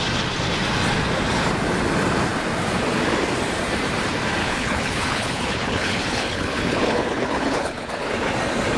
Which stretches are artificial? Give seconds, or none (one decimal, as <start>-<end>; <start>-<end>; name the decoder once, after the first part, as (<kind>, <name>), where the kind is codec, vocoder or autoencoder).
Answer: 4.4-8.1 (codec, HILCodec)